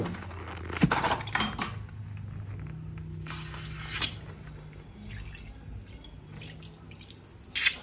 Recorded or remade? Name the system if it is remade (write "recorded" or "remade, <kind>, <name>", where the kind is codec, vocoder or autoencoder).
recorded